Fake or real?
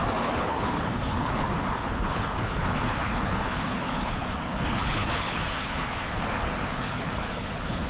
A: fake